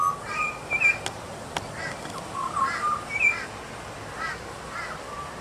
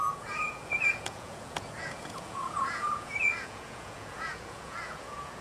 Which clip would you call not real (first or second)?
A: second